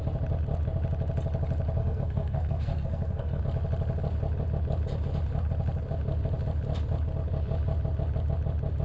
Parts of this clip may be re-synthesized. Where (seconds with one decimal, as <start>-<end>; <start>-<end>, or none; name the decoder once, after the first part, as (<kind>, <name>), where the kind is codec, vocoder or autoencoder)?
1.8-3.4 (codec, SNAC)